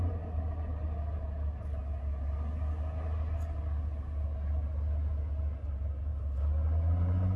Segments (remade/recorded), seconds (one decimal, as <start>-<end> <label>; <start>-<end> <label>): 0.0-7.4 recorded